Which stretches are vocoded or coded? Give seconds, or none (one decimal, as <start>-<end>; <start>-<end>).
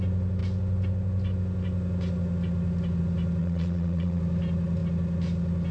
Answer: 3.4-4.2